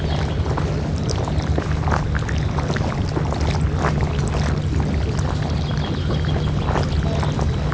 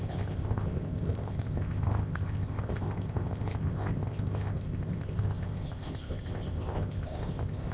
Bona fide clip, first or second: first